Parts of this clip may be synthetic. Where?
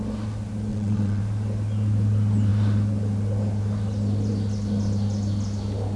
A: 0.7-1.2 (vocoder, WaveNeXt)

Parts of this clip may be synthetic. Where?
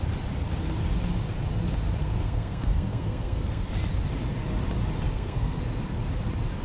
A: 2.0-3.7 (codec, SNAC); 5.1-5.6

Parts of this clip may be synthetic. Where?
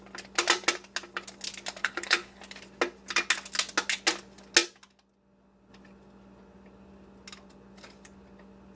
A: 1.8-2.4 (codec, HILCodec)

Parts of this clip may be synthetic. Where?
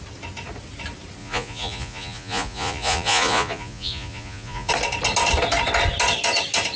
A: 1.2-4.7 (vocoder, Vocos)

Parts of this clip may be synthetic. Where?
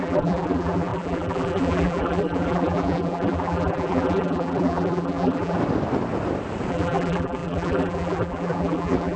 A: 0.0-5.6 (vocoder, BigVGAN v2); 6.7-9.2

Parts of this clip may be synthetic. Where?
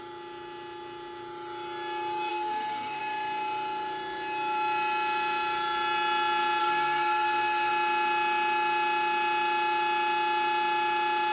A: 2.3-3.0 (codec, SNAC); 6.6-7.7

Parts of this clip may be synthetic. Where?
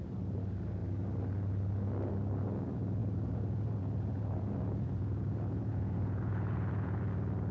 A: 3.0-7.0 (vocoder, Vocos)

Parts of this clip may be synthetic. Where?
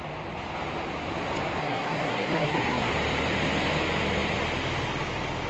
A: 1.6-2.9 (codec, SNAC)